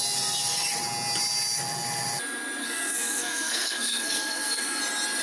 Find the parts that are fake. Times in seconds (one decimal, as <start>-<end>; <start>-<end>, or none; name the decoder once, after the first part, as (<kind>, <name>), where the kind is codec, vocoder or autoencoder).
2.6-4.8 (codec, SNAC)